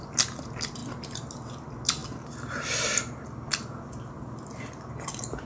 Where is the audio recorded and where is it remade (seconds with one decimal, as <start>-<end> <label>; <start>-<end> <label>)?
0.0-5.5 recorded